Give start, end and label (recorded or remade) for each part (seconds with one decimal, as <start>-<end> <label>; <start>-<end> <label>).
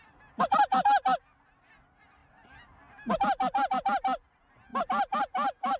0.0-5.8 recorded